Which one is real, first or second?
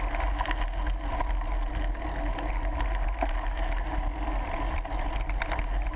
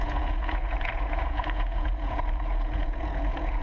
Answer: first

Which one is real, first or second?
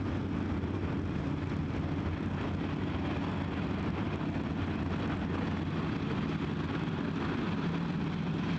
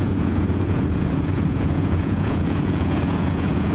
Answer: first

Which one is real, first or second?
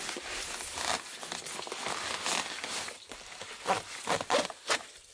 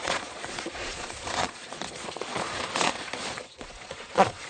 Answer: first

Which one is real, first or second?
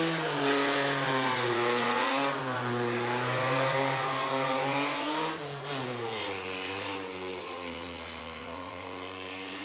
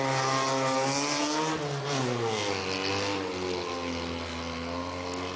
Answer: second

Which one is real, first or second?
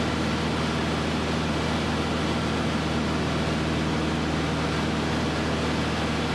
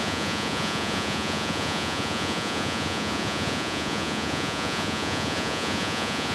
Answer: first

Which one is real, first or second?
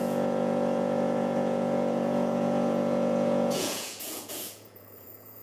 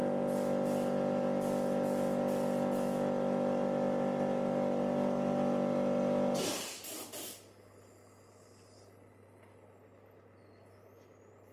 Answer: second